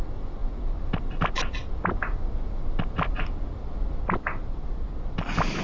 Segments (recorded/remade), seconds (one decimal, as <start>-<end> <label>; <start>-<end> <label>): 0.0-5.6 recorded